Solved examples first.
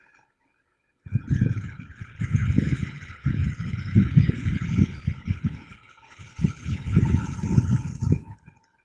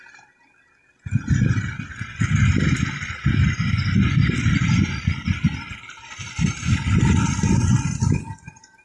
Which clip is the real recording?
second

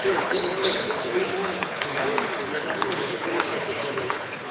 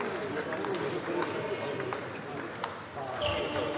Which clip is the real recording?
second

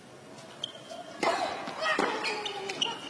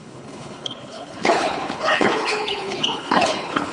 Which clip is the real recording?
first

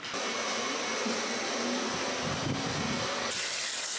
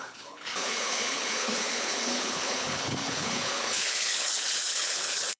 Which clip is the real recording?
first